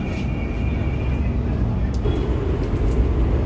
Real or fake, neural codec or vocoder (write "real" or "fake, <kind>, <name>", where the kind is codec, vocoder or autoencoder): real